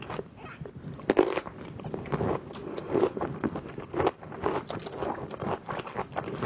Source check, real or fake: real